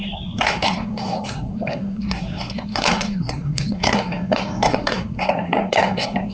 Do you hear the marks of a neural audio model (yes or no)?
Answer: yes